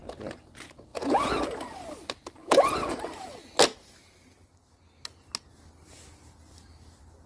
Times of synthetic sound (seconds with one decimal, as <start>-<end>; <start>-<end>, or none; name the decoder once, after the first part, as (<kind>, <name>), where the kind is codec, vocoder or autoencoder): 0.9-1.4 (vocoder, Vocos); 2.4-3.0